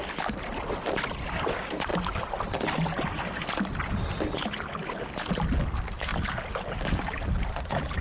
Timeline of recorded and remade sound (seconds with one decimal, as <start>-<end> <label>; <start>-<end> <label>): 0.0-8.0 recorded